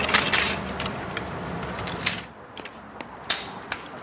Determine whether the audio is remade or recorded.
remade